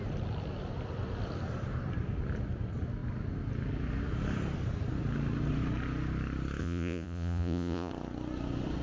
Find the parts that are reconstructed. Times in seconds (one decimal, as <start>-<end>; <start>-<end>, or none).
6.6-7.9